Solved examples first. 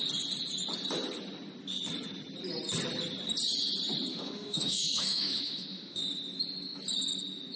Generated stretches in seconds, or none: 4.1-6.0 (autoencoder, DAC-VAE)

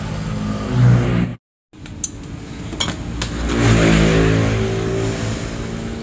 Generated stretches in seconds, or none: none

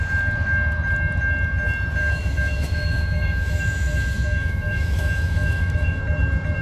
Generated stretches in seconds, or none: 2.0-6.0 (autoencoder, DAC-VAE)

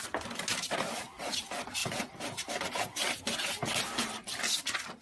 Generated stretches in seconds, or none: none